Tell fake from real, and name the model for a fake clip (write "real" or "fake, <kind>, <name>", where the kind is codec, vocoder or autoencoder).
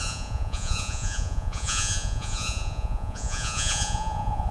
fake, vocoder, Vocos